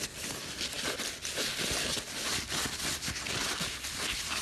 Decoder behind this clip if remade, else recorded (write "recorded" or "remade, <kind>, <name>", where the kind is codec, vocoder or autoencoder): recorded